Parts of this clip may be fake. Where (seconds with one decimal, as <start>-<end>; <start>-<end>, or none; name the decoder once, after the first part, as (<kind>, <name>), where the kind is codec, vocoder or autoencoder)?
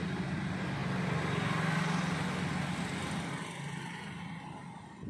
none